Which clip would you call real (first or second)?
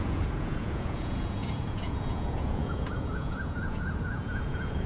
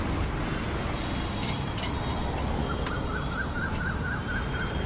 second